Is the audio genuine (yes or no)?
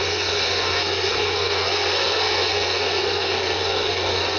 no